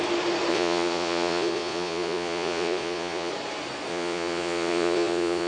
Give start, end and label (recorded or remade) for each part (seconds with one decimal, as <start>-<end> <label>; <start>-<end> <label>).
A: 0.0-0.5 recorded; 0.5-3.3 remade; 3.3-3.9 recorded; 3.9-5.5 remade